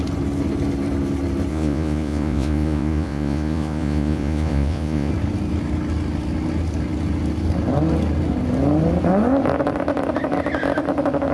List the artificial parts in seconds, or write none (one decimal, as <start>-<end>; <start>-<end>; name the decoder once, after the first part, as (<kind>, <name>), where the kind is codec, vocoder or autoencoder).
1.5-5.1 (vocoder, Vocos)